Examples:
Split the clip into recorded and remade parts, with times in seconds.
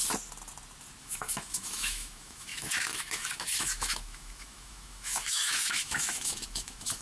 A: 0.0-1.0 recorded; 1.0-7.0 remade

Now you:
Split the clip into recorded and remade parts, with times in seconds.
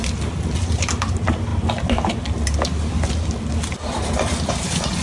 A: 0.0-5.0 recorded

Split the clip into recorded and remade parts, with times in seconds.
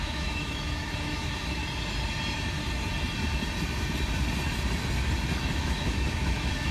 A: 0.0-1.6 remade; 1.6-5.6 recorded; 5.6-6.7 remade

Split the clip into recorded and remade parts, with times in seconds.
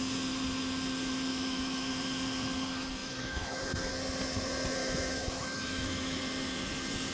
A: 0.0-1.3 recorded; 1.3-1.9 remade; 1.9-3.0 recorded; 3.0-3.6 remade; 3.6-4.8 recorded; 4.8-6.2 remade; 6.2-7.1 recorded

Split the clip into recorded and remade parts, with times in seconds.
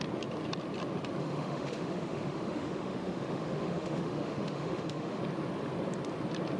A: 0.0-1.2 recorded; 1.2-5.2 remade; 5.2-6.6 recorded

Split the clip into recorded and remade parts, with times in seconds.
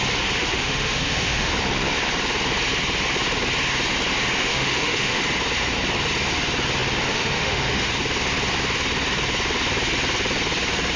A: 0.0-0.4 recorded; 0.4-1.5 remade; 1.5-4.4 recorded; 4.4-5.2 remade; 5.2-7.1 recorded; 7.1-7.9 remade; 7.9-11.0 recorded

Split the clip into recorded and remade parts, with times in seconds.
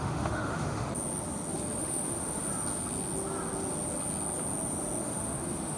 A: 0.0-0.9 remade; 0.9-1.8 recorded; 1.8-2.5 remade; 2.5-5.0 recorded; 5.0-5.8 remade